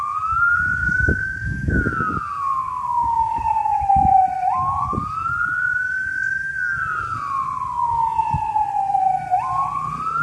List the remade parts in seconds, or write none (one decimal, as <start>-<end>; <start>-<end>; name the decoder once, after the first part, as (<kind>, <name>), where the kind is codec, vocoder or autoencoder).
0.8-3.8 (codec, DAC)